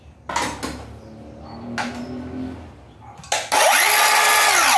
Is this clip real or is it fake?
real